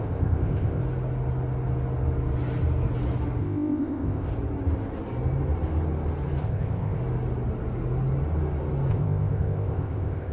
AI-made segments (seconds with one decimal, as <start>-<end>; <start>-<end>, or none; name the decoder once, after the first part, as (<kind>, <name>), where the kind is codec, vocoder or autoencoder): 0.0-0.8 (codec, ZipCodec); 3.4-4.3; 6.4-7.0; 8.9-10.3

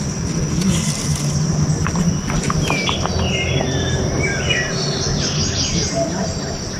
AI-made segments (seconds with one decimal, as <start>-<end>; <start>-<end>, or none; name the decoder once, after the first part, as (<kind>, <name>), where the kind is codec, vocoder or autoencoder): none

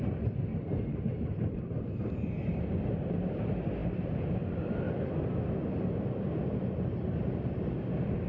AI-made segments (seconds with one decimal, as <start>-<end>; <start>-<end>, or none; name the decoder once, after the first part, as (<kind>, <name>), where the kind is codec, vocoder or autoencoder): 0.5-2.1 (vocoder, BigVGAN v2); 3.8-4.4

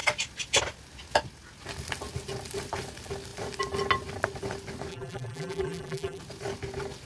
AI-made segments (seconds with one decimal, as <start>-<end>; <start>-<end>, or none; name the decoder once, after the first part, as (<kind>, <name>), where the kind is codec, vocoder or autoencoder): 4.9-6.2 (vocoder, BigVGAN v2)